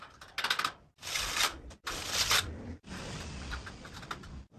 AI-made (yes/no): no